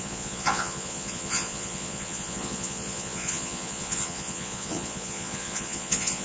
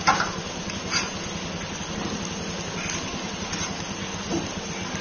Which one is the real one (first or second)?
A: second